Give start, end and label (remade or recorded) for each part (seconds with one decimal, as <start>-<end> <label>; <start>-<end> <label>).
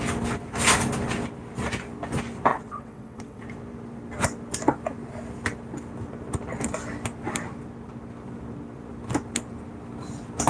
0.0-2.5 recorded; 2.5-3.4 remade; 3.4-10.5 recorded